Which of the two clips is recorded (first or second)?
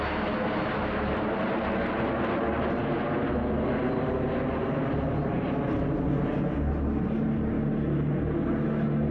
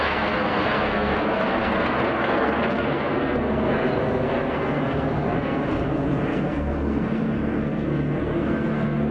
first